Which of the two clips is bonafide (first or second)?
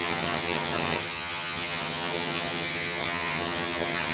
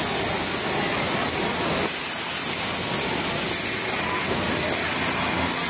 second